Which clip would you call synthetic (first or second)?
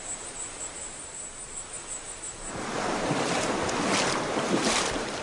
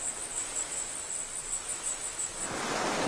first